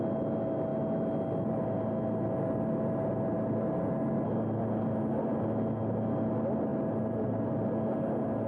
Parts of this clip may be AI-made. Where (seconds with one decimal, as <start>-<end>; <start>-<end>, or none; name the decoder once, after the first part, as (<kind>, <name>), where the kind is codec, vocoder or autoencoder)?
6.7-7.5 (vocoder, BigVGAN v2)

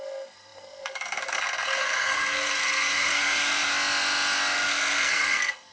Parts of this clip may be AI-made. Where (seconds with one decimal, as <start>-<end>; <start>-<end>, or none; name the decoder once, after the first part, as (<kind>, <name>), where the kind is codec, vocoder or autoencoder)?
0.0-3.7 (codec, SNAC); 4.7-5.7